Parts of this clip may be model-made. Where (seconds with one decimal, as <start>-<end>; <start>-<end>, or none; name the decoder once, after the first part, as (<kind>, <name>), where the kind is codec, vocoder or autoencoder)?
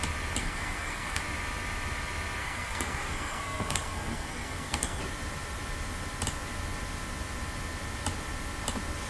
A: 0.4-1.2 (codec, SNAC); 2.4-5.0